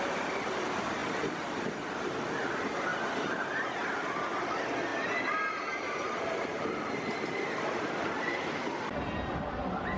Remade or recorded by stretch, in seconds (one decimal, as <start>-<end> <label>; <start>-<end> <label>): 0.0-2.9 remade; 2.9-4.0 recorded; 4.0-10.0 remade